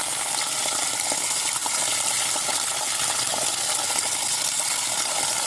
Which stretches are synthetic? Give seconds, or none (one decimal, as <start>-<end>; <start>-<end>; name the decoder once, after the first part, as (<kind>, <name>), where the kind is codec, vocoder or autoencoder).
0.0-0.7 (vocoder, BigVGAN v2)